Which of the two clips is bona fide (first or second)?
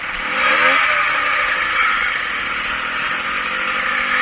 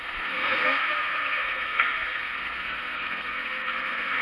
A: first